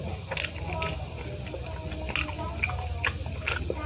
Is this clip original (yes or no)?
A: yes